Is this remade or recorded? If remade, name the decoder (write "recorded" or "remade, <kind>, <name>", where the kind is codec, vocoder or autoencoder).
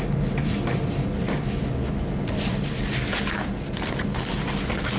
recorded